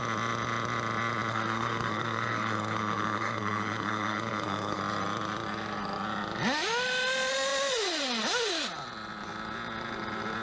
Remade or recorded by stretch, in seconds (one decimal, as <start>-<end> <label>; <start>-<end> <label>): 0.0-1.3 recorded; 1.3-4.8 remade; 4.8-10.4 recorded